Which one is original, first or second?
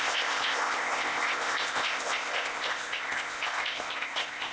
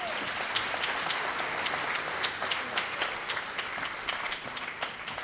second